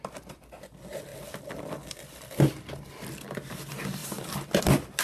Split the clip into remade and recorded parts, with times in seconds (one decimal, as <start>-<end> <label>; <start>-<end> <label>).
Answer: 0.0-1.1 recorded; 1.1-2.9 remade; 2.9-5.0 recorded